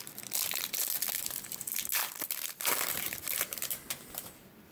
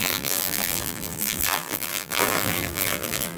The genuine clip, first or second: first